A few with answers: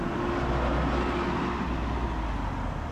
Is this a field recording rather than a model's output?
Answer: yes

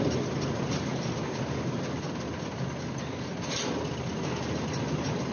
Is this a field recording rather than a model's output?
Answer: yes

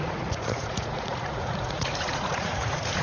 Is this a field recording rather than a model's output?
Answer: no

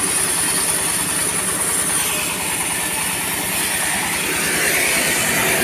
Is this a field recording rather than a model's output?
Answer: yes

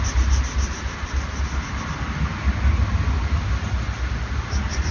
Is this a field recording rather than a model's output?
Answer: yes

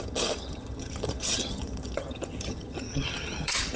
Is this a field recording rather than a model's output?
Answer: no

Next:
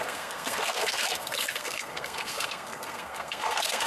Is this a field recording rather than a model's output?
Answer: no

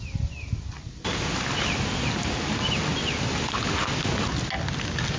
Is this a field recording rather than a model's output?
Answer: yes